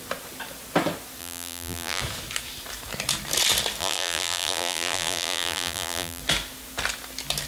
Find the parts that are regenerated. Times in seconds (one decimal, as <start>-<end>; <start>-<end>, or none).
1.2-2.0; 3.8-6.2